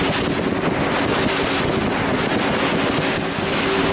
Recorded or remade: recorded